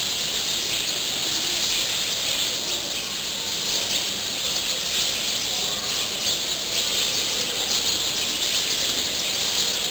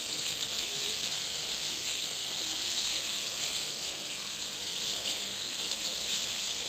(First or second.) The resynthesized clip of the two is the second